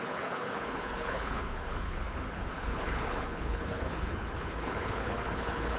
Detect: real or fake fake